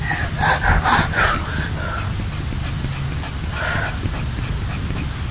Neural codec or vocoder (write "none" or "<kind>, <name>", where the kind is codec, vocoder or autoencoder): none